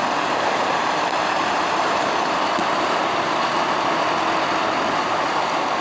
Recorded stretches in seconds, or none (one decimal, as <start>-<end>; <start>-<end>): 2.0-2.6; 3.5-5.8

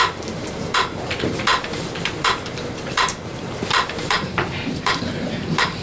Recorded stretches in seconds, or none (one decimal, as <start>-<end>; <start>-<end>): none

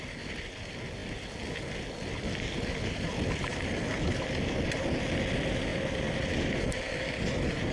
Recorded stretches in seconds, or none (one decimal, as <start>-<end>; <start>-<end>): 0.0-7.7

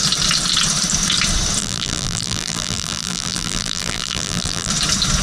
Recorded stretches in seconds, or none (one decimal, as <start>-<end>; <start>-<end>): 0.0-1.6; 4.7-5.2

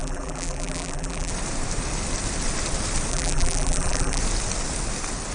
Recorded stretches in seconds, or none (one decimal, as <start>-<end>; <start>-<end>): 1.3-3.1; 4.2-5.3

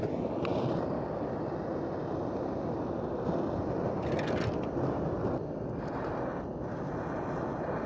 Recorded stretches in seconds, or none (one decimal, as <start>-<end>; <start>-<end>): 0.0-0.5; 5.2-7.9

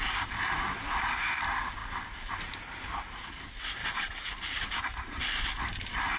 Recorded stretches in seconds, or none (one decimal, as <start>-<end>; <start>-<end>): 0.0-1.8; 3.1-3.8

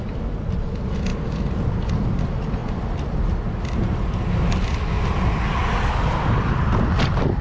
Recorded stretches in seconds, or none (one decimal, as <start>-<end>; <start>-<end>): 0.0-7.4